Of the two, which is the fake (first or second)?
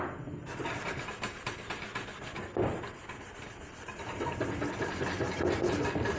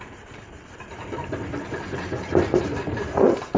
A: second